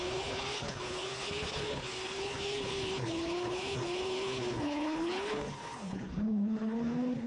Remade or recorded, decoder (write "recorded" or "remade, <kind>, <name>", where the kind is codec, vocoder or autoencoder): remade, codec, HILCodec